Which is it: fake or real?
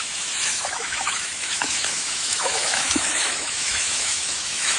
fake